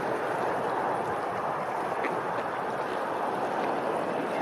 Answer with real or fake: real